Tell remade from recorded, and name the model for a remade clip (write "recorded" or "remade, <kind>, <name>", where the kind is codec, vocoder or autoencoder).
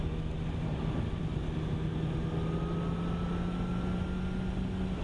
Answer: recorded